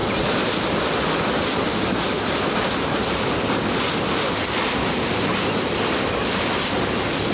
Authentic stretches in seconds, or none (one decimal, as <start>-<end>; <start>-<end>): 0.0-7.3